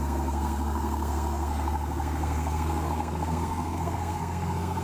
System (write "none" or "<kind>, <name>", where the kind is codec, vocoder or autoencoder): codec, SNAC